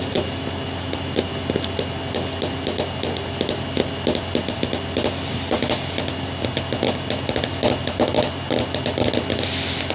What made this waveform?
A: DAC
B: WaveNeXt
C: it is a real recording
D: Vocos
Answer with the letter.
C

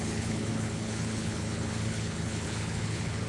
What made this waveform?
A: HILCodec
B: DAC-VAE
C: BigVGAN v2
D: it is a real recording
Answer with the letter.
A